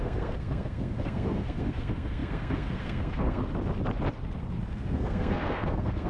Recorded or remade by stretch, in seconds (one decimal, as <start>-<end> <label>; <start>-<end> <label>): 0.0-3.4 remade; 3.4-4.7 recorded; 4.7-6.1 remade

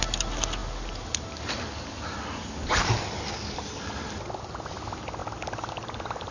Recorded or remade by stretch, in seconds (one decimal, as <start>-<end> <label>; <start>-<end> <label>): 0.0-6.3 recorded

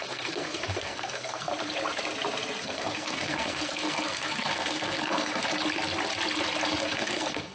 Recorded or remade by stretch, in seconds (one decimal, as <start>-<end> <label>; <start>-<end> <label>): 0.0-1.5 remade; 1.5-2.6 recorded; 2.6-5.3 remade; 5.3-6.8 recorded; 6.8-7.5 remade

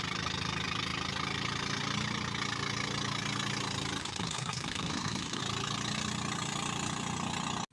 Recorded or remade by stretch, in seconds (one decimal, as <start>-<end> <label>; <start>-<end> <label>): 0.0-4.0 recorded; 4.0-5.4 remade; 5.4-7.7 recorded

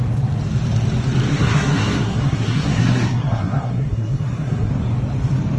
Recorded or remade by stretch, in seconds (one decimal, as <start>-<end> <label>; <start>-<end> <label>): 0.0-1.3 recorded; 1.3-4.7 remade; 4.7-5.6 recorded

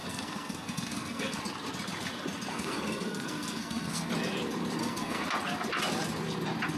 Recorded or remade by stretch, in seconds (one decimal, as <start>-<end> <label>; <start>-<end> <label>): 0.0-1.4 remade; 1.4-2.5 recorded; 2.5-4.1 remade; 4.1-4.8 recorded; 4.8-5.3 remade; 5.3-6.8 recorded

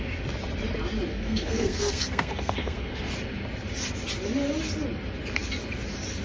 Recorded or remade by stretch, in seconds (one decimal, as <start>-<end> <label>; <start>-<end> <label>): 0.0-1.1 recorded; 1.1-3.1 remade; 3.1-6.2 recorded

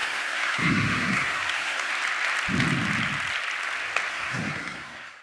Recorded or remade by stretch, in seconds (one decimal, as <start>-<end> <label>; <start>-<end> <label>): 0.0-1.9 remade; 1.9-4.1 recorded; 4.1-5.2 remade